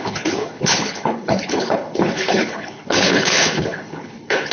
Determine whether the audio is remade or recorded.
remade